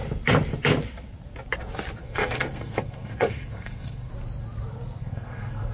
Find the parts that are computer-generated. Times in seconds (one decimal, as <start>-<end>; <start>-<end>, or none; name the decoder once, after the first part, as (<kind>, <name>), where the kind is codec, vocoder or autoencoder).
2.0-4.1 (codec, SNAC); 5.0-5.7